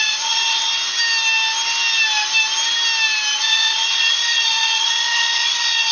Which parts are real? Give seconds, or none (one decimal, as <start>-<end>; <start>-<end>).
0.7-3.4